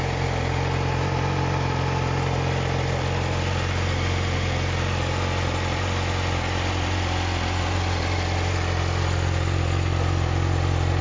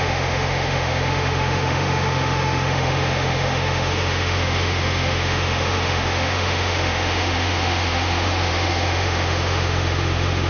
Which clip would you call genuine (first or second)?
first